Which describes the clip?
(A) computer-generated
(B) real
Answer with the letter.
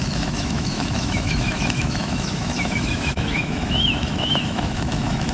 A